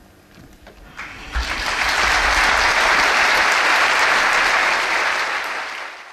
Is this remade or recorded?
recorded